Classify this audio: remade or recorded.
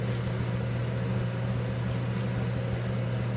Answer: recorded